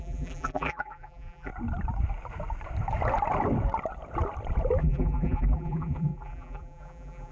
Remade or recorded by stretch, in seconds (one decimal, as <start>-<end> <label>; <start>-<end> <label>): 0.0-1.5 remade; 1.5-4.8 recorded; 4.8-7.3 remade